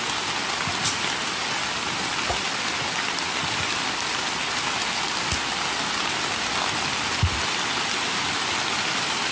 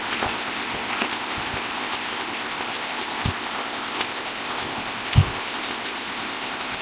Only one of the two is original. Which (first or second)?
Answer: first